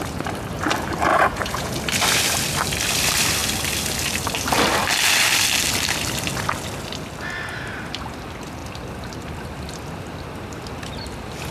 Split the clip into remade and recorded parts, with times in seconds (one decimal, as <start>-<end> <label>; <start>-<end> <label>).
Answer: 0.0-1.1 recorded; 1.1-1.8 remade; 1.8-11.5 recorded